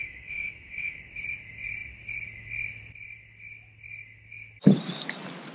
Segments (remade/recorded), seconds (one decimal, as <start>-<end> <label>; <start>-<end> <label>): 0.0-1.0 remade; 1.0-5.5 recorded